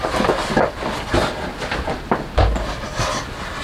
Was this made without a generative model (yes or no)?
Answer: yes